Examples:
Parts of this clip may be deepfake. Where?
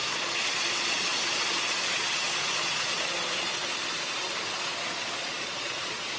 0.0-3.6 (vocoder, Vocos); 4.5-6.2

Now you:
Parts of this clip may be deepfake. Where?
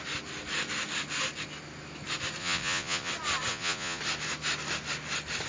2.4-3.1 (vocoder, Vocos); 3.5-4.0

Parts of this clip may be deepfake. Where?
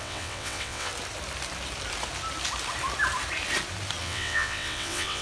0.0-0.9 (vocoder, WaveNeXt); 4.0-5.2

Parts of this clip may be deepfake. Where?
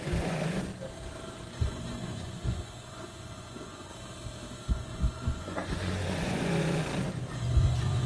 0.0-0.7 (vocoder, Vocos); 1.5-3.9; 4.7-6.8; 7.3-8.1